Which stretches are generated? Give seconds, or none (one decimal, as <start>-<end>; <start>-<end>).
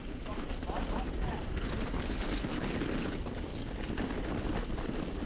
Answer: none